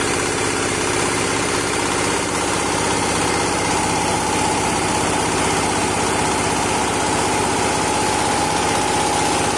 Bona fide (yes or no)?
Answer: yes